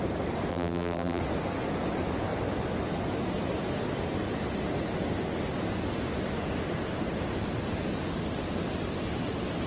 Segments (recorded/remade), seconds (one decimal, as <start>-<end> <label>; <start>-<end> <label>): 0.0-0.5 recorded; 0.5-1.2 remade; 1.2-9.7 recorded